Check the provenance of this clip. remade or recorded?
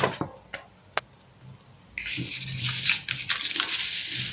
recorded